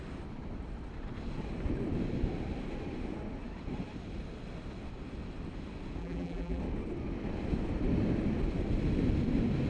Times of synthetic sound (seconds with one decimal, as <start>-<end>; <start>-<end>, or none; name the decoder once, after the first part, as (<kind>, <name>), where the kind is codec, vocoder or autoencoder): 6.0-6.6 (vocoder, BigVGAN v2)